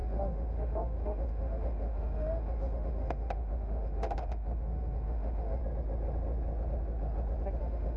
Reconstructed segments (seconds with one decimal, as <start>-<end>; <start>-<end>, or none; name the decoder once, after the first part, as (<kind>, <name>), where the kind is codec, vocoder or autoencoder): 0.0-5.6 (autoencoder, DAC-VAE); 7.6-8.0